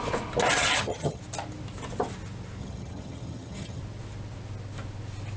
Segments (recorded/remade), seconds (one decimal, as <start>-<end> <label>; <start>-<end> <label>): 0.0-0.6 recorded; 0.6-1.2 remade; 1.2-2.6 recorded; 2.6-3.8 remade; 3.8-5.4 recorded